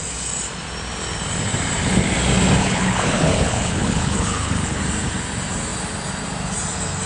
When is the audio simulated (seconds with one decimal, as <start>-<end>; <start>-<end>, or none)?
2.6-4.8